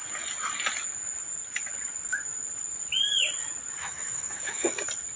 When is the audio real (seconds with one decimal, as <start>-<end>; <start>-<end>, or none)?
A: 0.0-3.8; 4.7-5.2